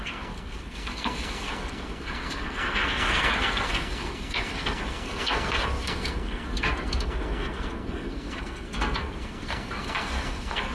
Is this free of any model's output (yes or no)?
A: no